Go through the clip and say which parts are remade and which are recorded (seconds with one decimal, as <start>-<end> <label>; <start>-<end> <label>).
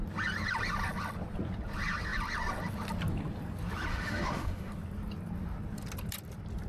0.0-3.9 recorded; 3.9-4.7 remade; 4.7-6.7 recorded